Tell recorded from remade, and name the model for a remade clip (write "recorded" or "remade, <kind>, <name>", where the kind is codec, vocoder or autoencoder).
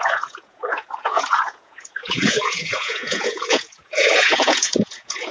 remade, vocoder, Vocos